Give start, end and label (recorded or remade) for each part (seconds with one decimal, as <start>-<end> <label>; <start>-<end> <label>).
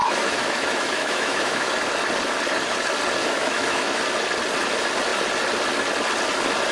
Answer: 0.0-1.7 remade; 1.7-3.2 recorded; 3.2-4.0 remade; 4.0-6.7 recorded